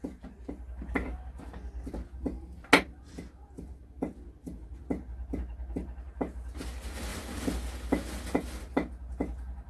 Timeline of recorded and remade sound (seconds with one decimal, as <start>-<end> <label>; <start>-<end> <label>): 0.0-9.7 recorded